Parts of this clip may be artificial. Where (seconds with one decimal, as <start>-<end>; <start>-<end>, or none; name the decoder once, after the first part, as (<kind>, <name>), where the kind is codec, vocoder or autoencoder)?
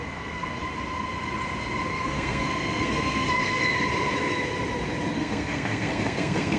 0.0-0.6 (codec, SNAC); 1.9-3.6; 5.1-6.6